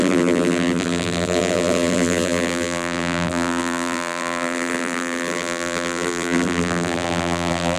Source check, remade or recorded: remade